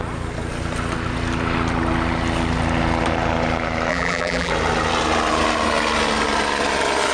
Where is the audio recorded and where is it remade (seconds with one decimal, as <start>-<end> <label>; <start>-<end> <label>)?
0.0-3.9 recorded; 3.9-4.5 remade; 4.5-7.1 recorded